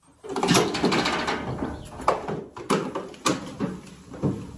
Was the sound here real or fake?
real